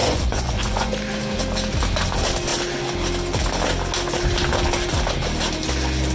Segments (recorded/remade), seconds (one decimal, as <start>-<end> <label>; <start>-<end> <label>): 0.0-0.9 remade; 0.9-6.1 recorded